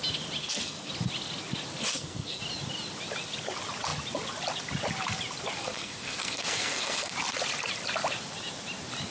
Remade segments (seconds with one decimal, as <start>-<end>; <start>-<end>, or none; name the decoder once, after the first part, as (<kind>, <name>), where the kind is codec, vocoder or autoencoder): 0.4-0.9 (codec, SNAC); 1.9-2.4; 5.6-7.1